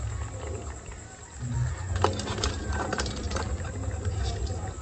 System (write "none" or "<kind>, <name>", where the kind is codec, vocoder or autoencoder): none